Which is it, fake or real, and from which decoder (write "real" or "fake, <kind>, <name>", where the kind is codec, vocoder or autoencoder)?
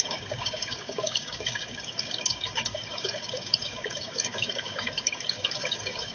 fake, codec, DAC